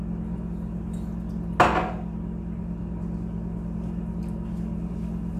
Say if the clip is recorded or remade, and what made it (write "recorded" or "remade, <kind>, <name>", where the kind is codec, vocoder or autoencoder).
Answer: recorded